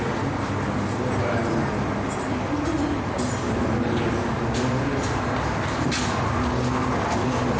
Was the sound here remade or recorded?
recorded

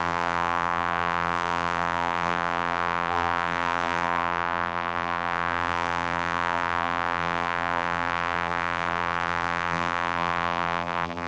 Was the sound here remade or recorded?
remade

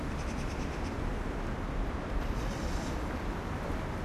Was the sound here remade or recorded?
remade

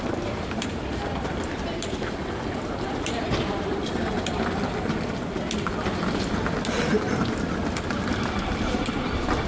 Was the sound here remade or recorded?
remade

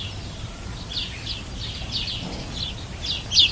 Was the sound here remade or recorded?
recorded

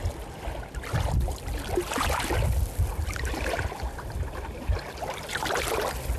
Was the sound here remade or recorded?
recorded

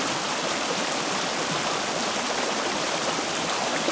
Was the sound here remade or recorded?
recorded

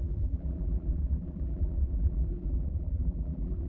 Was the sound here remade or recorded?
remade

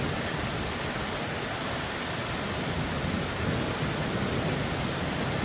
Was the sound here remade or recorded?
remade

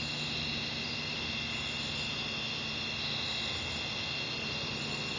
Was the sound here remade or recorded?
recorded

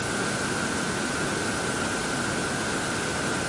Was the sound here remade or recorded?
recorded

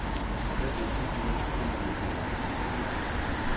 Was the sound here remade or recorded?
recorded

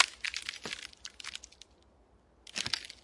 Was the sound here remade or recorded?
recorded